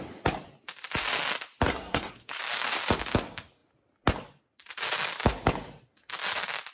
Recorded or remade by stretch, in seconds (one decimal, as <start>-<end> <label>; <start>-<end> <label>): 0.0-1.7 recorded; 1.7-2.4 remade; 2.4-6.7 recorded